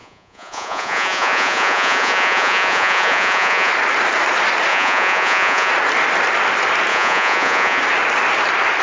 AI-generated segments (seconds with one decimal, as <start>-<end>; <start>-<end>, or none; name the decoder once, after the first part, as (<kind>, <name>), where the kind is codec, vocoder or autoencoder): 0.0-3.7 (vocoder, Vocos); 4.7-5.7; 6.9-7.8